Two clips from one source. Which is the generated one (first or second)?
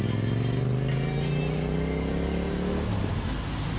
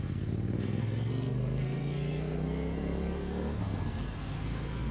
second